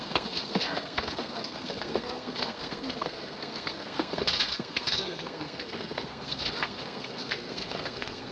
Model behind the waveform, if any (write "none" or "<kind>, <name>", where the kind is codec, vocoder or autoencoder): codec, SNAC